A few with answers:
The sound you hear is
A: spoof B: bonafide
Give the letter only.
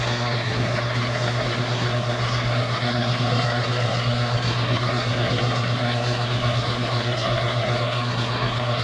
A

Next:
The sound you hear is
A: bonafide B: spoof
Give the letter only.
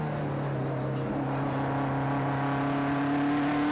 A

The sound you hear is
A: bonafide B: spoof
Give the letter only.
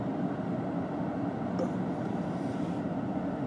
A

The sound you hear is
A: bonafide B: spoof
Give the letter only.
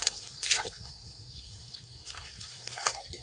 B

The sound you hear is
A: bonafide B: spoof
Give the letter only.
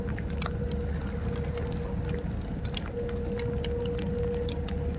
A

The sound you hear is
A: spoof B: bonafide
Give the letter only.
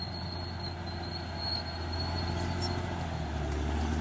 B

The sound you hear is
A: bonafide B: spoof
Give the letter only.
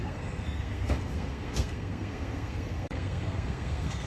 B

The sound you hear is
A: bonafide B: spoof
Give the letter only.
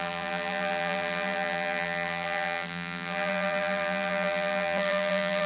B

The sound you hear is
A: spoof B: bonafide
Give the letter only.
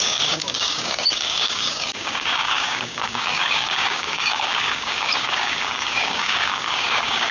A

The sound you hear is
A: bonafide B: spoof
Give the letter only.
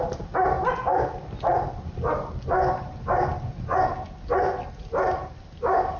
A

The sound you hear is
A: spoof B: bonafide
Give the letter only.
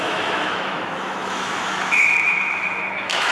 A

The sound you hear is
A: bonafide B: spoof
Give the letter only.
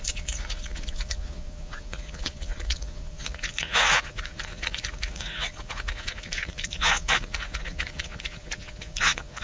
B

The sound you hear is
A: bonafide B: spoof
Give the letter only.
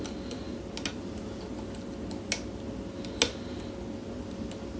A